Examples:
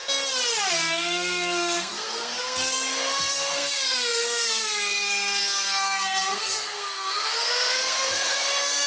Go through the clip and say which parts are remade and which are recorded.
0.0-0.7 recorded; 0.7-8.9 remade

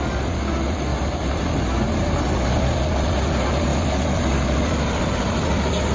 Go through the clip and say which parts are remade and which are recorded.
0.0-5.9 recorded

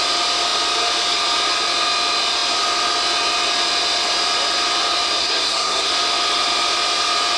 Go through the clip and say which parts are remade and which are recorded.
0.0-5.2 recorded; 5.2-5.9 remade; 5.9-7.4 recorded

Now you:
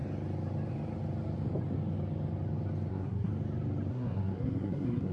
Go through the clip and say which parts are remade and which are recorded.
0.0-2.9 recorded; 2.9-3.3 remade; 3.3-3.9 recorded; 3.9-5.1 remade

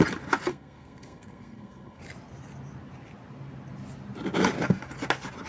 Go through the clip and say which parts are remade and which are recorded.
0.0-0.5 recorded; 0.5-2.0 remade; 2.0-5.5 recorded

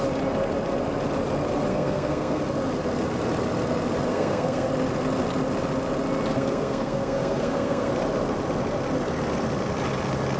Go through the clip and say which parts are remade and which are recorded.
0.0-1.7 recorded; 1.7-2.4 remade; 2.4-4.1 recorded; 4.1-4.7 remade; 4.7-6.3 recorded; 6.3-7.9 remade; 7.9-10.4 recorded

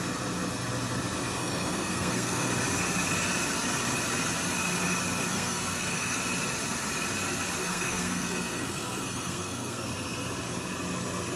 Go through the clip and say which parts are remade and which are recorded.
0.0-1.4 recorded; 1.4-2.5 remade; 2.5-5.3 recorded; 5.3-6.2 remade; 6.2-7.6 recorded; 7.6-9.9 remade; 9.9-11.4 recorded